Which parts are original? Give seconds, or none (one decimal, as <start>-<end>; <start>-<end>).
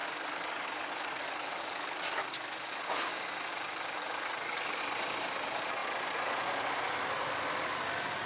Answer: 3.1-4.0; 4.8-8.3